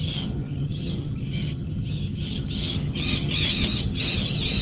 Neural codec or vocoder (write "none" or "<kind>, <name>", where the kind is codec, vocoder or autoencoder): vocoder, HiFi-GAN